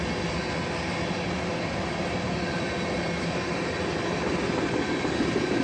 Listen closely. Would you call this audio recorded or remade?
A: recorded